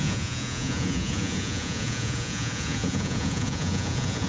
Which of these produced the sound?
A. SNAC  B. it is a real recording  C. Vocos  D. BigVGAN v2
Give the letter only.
C